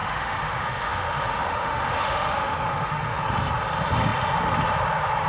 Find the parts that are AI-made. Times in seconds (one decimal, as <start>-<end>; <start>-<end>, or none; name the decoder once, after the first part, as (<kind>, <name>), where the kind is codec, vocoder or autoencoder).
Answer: 0.0-3.2 (autoencoder, DAC-VAE)